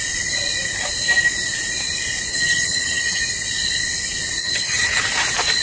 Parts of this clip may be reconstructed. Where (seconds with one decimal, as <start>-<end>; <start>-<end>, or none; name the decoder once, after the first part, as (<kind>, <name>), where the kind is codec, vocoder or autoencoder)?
2.3-3.2 (vocoder, HiFi-GAN); 4.4-5.0